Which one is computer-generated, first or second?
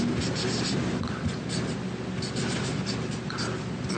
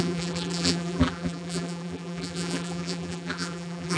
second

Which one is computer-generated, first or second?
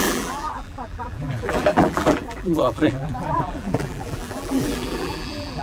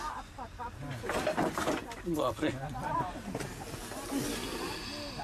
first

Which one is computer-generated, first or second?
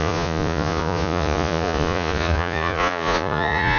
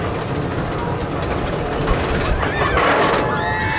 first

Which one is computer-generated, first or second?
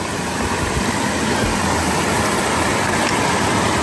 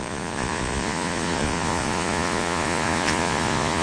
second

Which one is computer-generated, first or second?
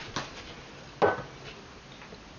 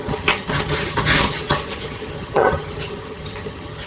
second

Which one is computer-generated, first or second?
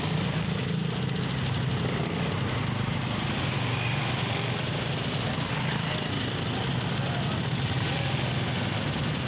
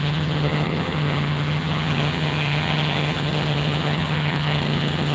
second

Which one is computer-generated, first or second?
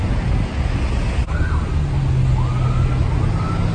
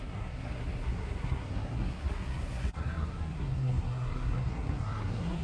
second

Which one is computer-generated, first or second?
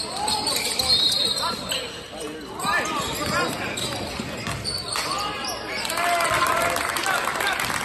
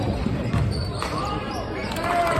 second